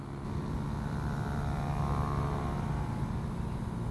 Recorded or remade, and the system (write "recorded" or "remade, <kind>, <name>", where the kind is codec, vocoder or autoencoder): recorded